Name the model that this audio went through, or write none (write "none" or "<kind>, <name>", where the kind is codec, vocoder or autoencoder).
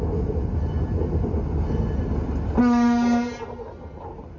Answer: none